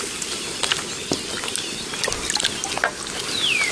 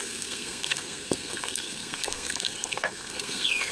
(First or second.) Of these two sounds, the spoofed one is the second